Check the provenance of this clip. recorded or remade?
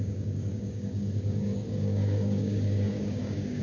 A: remade